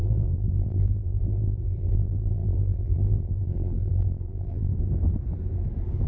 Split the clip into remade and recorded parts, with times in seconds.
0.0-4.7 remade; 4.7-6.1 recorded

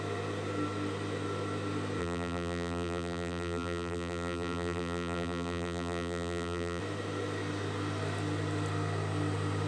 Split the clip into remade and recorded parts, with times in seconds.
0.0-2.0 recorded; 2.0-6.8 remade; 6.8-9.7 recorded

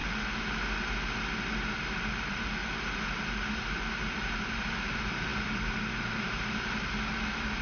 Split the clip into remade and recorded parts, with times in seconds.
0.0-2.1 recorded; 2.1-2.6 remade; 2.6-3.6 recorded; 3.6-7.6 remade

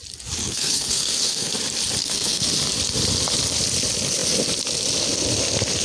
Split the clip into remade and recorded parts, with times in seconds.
0.0-0.4 recorded; 0.4-1.5 remade; 1.5-2.0 recorded; 2.0-2.5 remade; 2.5-5.8 recorded

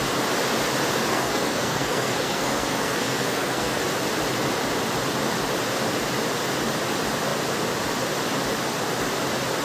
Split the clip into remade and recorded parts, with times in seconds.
0.0-1.1 recorded; 1.1-3.8 remade; 3.8-9.6 recorded